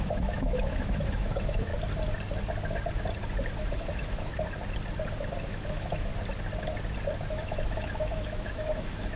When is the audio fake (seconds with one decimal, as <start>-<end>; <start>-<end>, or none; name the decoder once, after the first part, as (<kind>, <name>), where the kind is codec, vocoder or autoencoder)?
0.0-1.7 (autoencoder, DAC-VAE); 3.6-4.3; 5.5-6.1; 7.3-9.2